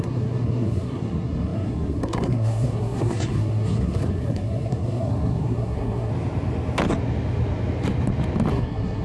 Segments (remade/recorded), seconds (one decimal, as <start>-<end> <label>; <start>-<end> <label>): 0.0-6.1 remade; 6.1-8.5 recorded; 8.5-9.0 remade